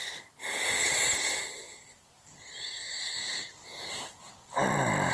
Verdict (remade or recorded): recorded